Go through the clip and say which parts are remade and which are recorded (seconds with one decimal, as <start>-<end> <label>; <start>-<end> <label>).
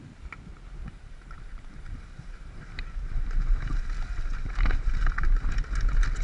0.0-0.8 recorded; 0.8-2.6 remade; 2.6-6.2 recorded